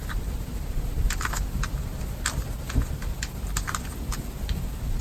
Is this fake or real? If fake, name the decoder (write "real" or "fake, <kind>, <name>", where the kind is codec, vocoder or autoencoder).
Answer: real